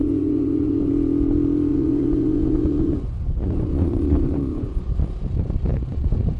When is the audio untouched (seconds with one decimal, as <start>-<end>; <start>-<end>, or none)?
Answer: 0.9-1.7; 5.1-5.7